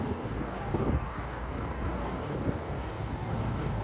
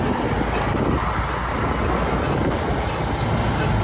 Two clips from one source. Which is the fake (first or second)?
first